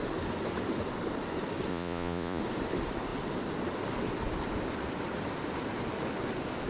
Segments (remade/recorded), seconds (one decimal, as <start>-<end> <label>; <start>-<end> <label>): 0.0-1.7 recorded; 1.7-2.4 remade; 2.4-6.7 recorded